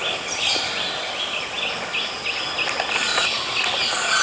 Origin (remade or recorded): recorded